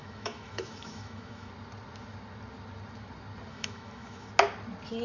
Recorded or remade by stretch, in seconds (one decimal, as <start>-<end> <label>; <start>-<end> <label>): 0.0-1.5 remade; 1.5-3.5 recorded; 3.5-4.3 remade; 4.3-5.0 recorded